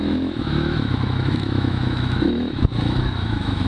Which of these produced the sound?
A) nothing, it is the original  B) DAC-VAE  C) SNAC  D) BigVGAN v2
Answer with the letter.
B